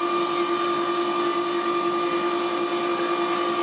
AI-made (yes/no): no